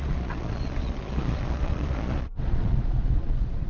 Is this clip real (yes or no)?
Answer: no